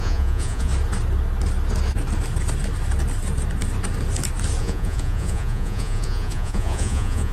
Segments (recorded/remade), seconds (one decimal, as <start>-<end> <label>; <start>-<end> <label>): 0.0-0.7 remade; 0.7-4.6 recorded; 4.6-7.3 remade